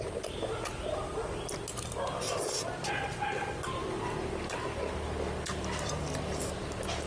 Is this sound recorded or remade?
recorded